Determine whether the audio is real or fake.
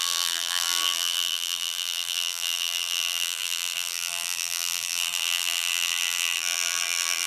fake